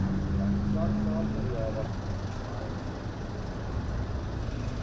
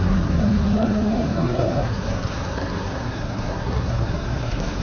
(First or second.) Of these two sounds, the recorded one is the first